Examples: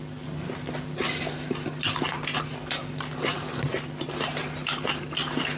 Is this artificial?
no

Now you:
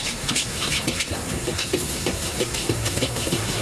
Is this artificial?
yes